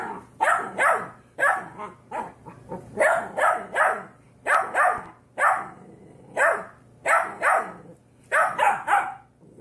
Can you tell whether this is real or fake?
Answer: real